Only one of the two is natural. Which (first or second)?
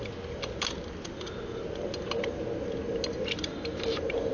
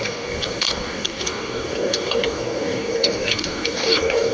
first